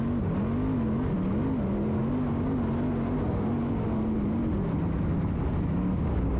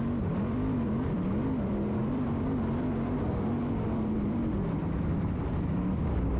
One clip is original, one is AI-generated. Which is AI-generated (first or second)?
second